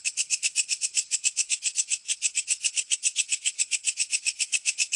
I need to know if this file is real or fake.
fake